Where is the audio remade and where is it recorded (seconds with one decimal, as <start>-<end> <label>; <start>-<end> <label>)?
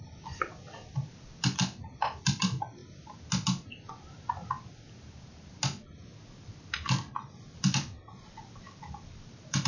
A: 0.0-2.8 remade; 2.8-6.6 recorded; 6.6-9.7 remade